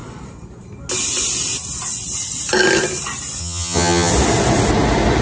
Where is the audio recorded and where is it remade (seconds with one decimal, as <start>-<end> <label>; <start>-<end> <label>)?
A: 0.0-3.4 recorded; 3.4-4.1 remade; 4.1-5.2 recorded